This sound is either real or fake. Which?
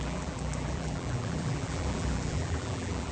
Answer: fake